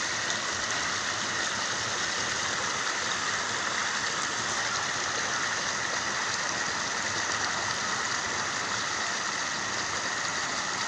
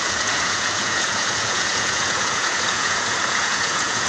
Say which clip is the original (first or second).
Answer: first